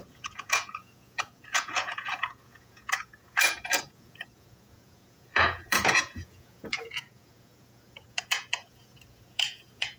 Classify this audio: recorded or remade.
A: remade